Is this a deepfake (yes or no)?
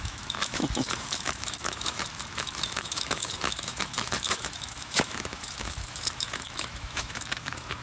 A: yes